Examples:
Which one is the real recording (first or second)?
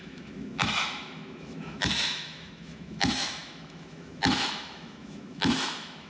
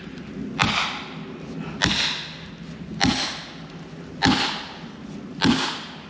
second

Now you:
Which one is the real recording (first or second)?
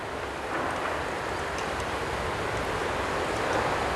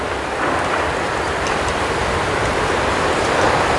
first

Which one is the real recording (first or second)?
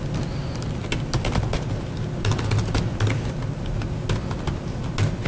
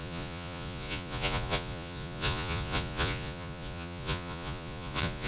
first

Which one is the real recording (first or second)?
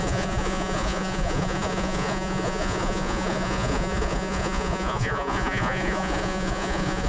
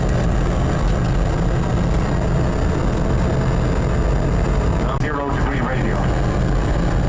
second